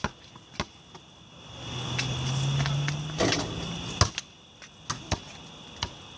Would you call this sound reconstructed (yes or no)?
no